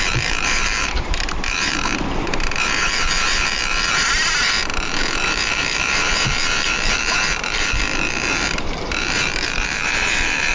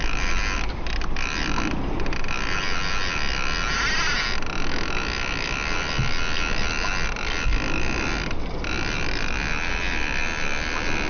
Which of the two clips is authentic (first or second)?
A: second